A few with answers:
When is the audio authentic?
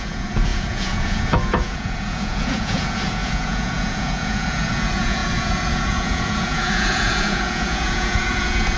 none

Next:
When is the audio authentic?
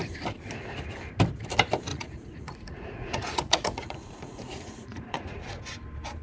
0.0-1.9; 5.6-6.2